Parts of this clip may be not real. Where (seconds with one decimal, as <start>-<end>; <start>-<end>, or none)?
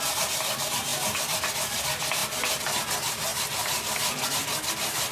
none